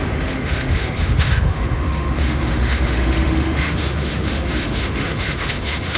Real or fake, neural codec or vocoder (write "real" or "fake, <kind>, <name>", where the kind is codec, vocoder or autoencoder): fake, autoencoder, DAC-VAE